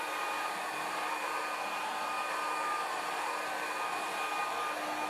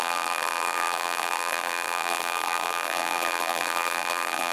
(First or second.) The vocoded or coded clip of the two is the second